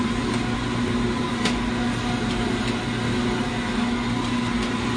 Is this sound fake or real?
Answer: real